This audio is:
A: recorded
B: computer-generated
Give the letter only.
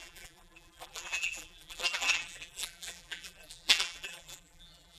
B